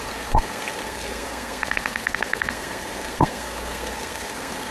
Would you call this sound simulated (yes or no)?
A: yes